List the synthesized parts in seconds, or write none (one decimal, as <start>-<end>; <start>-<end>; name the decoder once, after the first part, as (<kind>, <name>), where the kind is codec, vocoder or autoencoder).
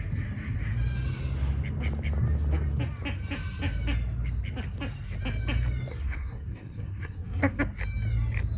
5.9-7.6 (codec, SNAC)